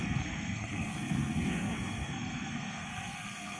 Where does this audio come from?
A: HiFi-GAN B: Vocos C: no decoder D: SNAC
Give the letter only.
D